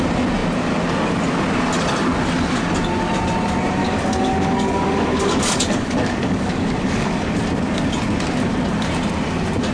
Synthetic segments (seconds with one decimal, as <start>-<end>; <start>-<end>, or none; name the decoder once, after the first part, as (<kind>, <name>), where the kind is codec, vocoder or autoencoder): 3.8-7.4 (codec, DAC)